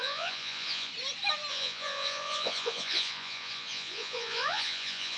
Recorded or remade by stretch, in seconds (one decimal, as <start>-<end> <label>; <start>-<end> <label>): 0.0-0.9 remade; 0.9-1.5 recorded; 1.5-5.2 remade